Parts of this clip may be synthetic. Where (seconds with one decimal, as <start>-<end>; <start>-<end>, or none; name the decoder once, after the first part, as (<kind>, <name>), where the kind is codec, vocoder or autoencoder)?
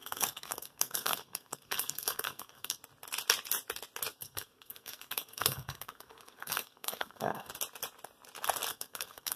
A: 0.0-2.8 (codec, SNAC); 4.1-7.5; 8.7-9.4